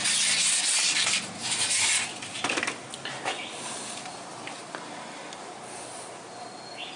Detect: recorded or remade recorded